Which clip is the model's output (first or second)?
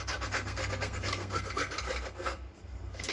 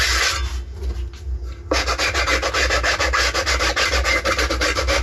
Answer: first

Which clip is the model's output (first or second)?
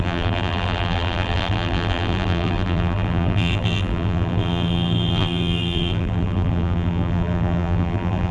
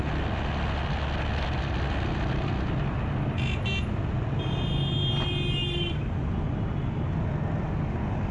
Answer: first